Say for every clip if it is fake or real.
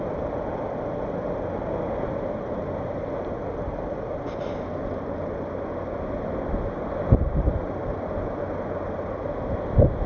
real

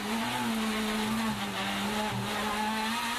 real